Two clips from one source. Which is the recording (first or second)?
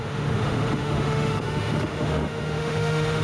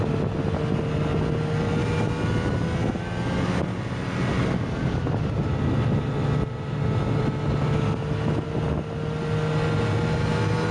second